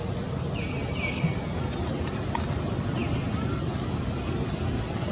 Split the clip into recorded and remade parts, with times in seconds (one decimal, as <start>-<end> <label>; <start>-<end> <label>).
0.0-5.1 recorded